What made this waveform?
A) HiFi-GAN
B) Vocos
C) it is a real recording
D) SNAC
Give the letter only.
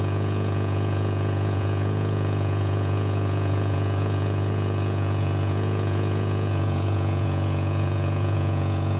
B